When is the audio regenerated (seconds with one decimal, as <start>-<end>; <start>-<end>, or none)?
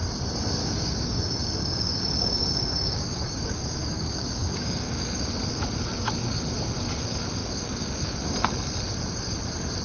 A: 0.6-5.3; 7.4-8.2